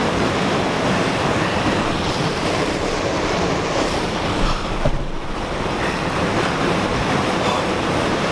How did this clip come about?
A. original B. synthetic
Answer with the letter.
B